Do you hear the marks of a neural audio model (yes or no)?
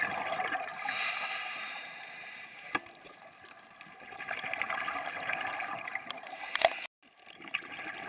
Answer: no